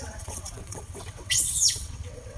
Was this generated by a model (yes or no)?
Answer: yes